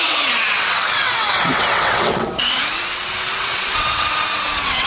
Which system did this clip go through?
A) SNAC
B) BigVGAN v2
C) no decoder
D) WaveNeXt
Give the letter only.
D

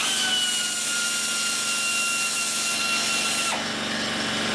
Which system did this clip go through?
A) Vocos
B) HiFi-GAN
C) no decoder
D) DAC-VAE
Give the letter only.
C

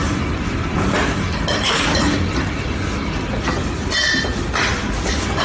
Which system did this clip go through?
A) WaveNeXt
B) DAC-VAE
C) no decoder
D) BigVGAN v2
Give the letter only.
C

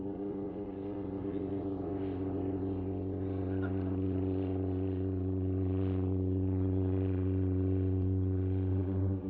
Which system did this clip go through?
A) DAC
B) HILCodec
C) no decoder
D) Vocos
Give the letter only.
D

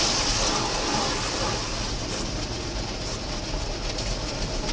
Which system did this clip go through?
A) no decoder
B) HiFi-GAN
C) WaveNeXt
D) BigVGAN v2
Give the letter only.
A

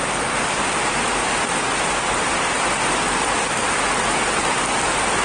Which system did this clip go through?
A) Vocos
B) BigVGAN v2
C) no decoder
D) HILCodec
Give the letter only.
C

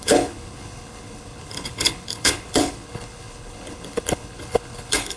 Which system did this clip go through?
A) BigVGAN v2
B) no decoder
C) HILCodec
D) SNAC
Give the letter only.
C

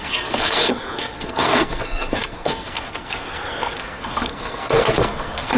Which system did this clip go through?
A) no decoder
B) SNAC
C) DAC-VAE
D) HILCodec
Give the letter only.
B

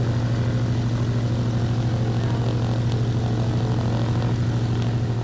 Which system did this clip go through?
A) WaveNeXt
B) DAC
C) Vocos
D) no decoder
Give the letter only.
D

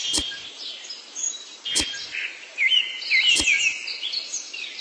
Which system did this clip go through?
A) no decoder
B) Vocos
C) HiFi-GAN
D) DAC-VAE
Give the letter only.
A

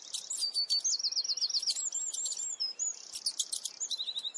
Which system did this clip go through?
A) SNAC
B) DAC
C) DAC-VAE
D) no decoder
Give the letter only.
D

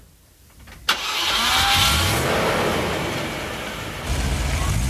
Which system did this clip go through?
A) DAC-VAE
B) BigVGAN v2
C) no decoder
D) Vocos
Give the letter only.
C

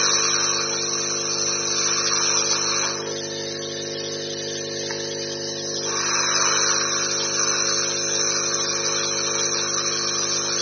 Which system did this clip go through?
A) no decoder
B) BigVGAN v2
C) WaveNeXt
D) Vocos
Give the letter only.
A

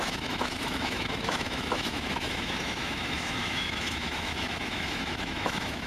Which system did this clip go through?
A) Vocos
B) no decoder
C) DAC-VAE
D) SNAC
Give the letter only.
C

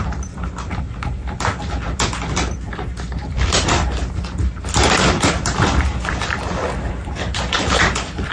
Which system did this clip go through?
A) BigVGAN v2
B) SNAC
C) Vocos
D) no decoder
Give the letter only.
A